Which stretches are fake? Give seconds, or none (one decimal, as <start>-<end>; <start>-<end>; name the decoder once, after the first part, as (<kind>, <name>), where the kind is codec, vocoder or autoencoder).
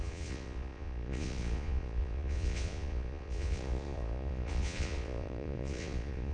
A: 0.0-6.3 (vocoder, Vocos)